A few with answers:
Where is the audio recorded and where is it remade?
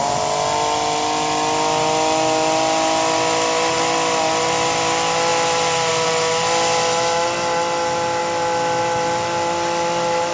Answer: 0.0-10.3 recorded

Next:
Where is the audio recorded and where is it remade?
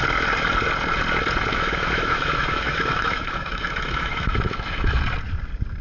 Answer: 0.0-1.5 recorded; 1.5-5.0 remade; 5.0-5.8 recorded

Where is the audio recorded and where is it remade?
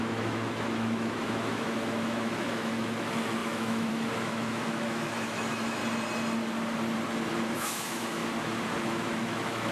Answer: 0.0-5.8 remade; 5.8-7.5 recorded; 7.5-8.2 remade; 8.2-8.8 recorded; 8.8-9.7 remade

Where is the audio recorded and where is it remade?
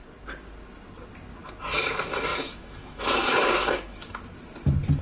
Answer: 0.0-2.3 recorded; 2.3-4.2 remade; 4.2-5.0 recorded